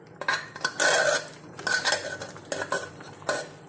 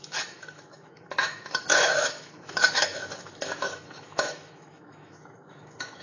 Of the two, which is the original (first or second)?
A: first